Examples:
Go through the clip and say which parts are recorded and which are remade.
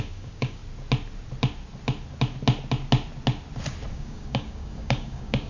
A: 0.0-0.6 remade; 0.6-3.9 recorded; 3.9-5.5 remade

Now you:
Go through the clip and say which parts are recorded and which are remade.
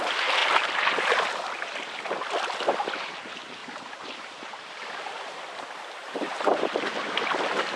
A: 0.0-3.6 recorded; 3.6-4.7 remade; 4.7-6.0 recorded; 6.0-6.7 remade; 6.7-7.8 recorded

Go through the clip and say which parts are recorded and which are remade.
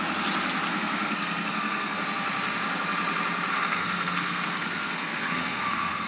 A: 0.0-0.7 recorded; 0.7-2.0 remade; 2.0-3.5 recorded; 3.5-6.1 remade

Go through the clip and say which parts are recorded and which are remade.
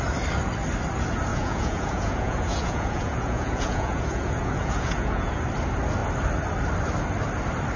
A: 0.0-1.3 recorded; 1.3-5.4 remade; 5.4-7.8 recorded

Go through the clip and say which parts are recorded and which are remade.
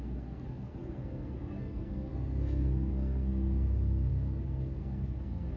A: 0.0-5.6 remade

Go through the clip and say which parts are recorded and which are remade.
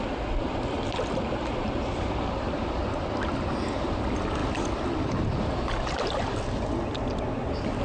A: 0.0-1.6 recorded; 1.6-3.3 remade; 3.3-7.8 recorded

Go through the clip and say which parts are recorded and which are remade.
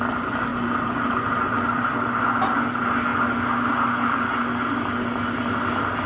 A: 0.0-6.1 recorded